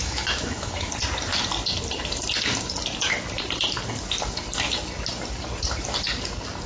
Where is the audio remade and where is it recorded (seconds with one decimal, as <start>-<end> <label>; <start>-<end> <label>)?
0.0-0.9 remade; 0.9-6.7 recorded